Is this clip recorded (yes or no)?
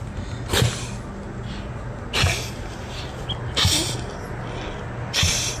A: yes